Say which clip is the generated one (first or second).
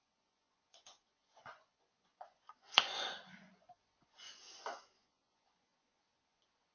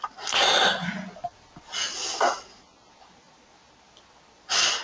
first